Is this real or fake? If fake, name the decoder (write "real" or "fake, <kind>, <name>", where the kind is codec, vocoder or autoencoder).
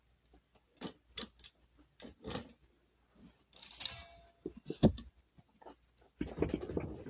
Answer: real